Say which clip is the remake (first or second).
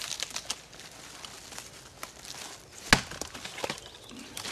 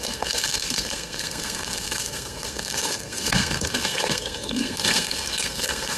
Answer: second